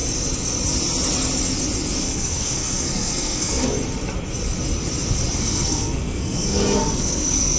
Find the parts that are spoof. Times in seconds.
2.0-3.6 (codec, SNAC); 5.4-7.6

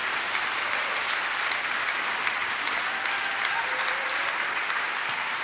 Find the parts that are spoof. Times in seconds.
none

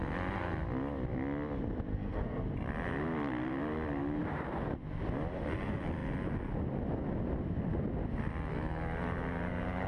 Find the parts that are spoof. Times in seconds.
1.9-2.4 (codec, SNAC)